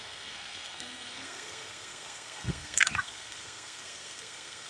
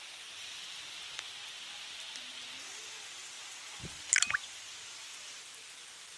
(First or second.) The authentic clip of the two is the second